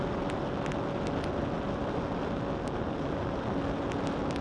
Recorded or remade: recorded